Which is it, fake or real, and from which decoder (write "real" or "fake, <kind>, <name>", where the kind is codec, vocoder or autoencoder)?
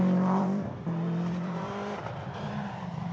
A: fake, vocoder, BigVGAN v2